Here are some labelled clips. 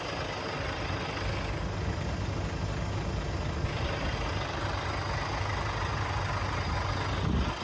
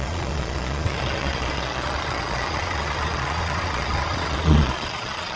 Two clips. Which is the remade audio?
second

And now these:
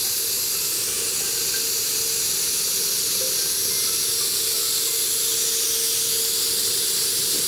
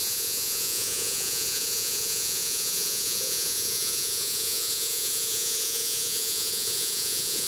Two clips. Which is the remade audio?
second